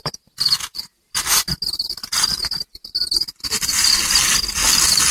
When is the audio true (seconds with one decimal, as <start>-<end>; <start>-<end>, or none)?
0.0-5.1